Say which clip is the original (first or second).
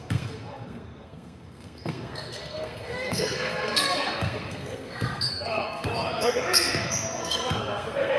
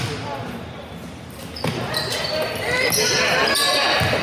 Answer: second